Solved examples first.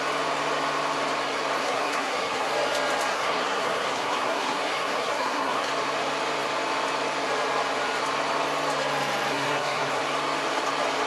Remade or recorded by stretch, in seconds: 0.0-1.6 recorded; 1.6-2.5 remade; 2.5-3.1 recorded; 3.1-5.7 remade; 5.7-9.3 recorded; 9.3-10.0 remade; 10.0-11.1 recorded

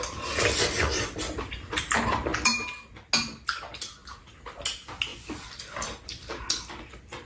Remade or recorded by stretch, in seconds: 0.0-7.3 recorded

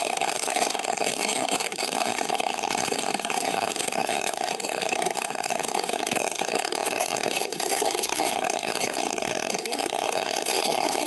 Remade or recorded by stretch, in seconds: 0.0-11.1 remade

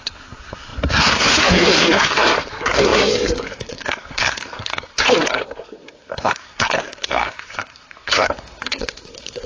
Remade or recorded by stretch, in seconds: 0.0-9.5 remade

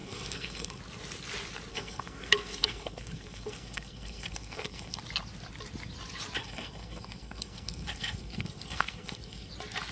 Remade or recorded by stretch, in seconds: 0.0-0.8 remade; 0.8-1.7 recorded; 1.7-5.0 remade; 5.0-6.4 recorded; 6.4-9.5 remade; 9.5-9.9 recorded